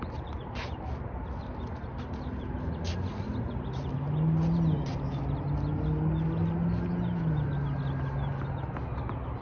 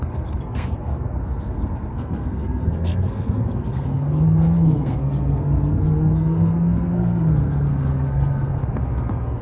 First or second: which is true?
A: first